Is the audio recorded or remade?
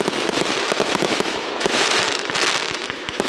remade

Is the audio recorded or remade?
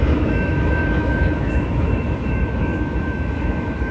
remade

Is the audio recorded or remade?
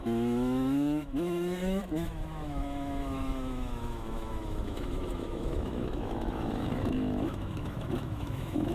remade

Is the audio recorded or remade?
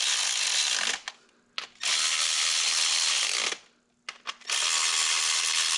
recorded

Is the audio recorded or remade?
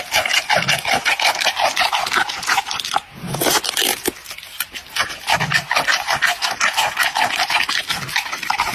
recorded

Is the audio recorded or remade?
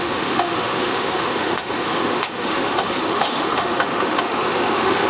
remade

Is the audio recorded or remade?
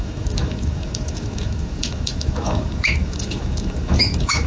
remade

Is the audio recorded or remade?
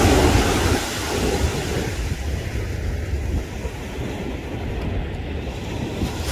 recorded